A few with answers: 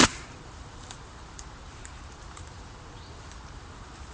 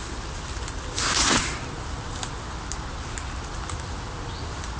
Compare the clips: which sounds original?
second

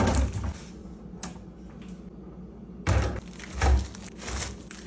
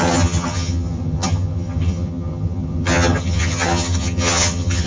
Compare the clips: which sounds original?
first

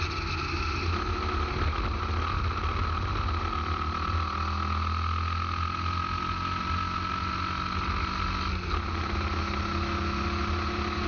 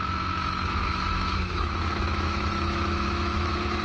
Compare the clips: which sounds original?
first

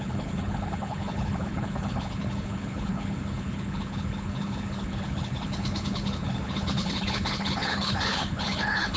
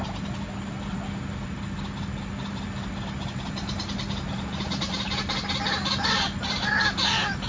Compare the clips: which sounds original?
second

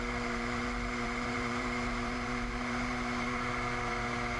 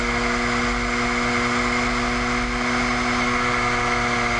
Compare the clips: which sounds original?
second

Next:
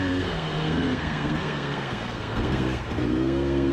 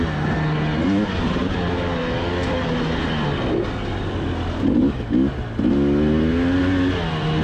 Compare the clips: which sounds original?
second